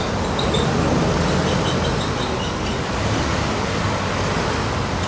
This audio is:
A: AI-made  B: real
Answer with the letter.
B